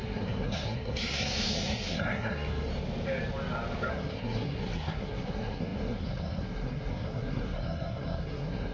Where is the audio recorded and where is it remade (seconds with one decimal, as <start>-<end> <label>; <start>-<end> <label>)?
0.0-2.7 remade; 2.7-3.9 recorded; 3.9-8.7 remade